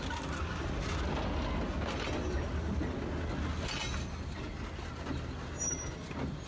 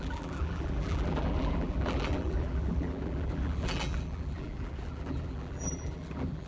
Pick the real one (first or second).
first